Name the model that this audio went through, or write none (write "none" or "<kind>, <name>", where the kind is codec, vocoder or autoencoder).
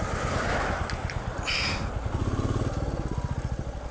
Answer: none